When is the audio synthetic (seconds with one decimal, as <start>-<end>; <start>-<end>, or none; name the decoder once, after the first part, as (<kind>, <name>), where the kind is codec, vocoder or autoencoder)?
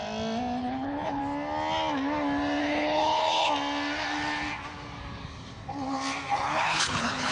0.6-1.2 (codec, HILCodec); 2.6-3.5; 6.3-7.3